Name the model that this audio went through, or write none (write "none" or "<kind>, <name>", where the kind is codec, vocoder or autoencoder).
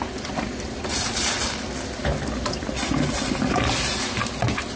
none